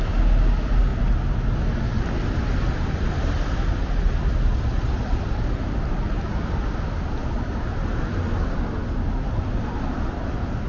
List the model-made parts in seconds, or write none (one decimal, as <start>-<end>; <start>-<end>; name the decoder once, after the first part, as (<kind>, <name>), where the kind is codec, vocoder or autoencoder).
none